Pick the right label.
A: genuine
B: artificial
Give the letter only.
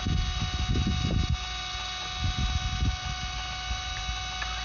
A